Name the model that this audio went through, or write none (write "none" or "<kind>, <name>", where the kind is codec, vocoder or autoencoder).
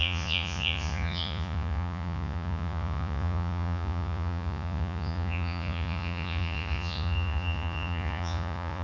vocoder, Vocos